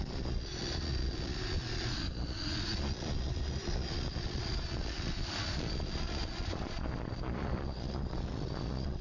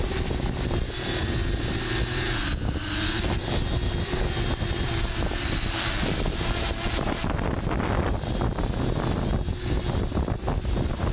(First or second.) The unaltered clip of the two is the second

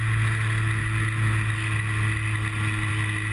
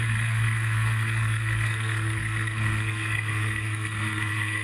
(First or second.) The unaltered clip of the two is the first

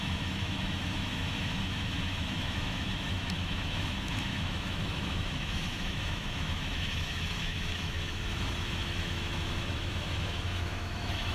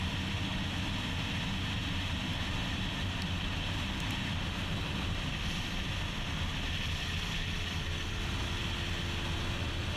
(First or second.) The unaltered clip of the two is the second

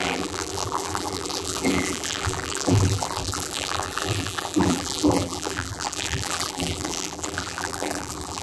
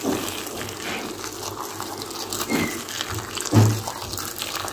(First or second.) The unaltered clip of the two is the second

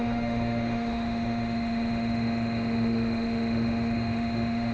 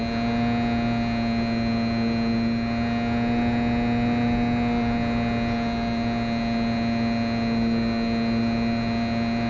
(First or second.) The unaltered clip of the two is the second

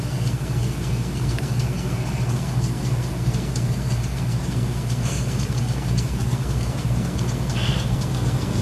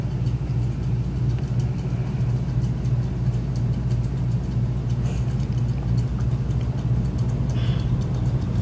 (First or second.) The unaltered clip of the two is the second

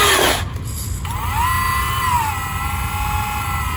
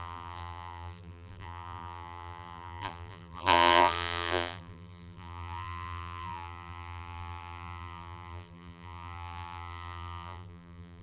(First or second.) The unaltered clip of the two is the first